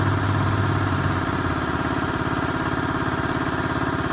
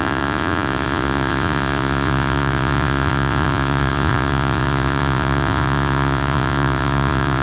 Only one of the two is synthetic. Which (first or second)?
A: second